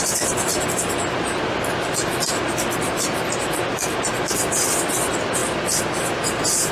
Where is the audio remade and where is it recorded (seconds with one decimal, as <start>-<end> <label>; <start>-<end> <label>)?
0.0-6.7 recorded